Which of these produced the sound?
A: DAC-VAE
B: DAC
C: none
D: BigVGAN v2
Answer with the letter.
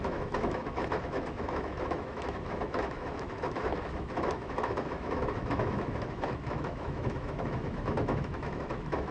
A